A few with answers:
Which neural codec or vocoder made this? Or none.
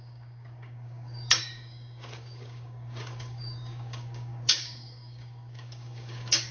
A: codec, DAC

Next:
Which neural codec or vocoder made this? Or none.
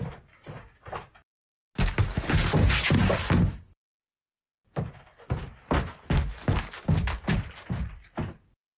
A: none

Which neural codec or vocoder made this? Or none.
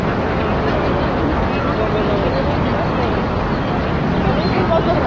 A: none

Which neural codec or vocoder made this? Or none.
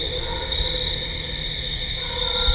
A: none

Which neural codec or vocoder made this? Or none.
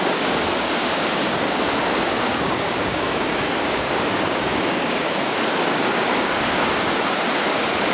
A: codec, DAC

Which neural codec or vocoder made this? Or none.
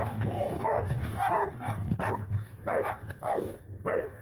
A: codec, DAC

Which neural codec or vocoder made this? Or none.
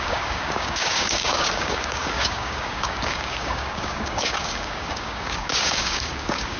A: codec, DAC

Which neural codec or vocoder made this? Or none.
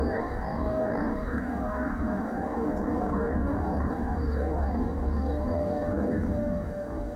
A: codec, DAC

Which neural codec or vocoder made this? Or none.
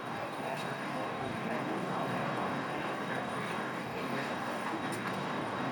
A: codec, DAC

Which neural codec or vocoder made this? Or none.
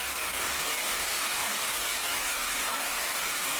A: codec, DAC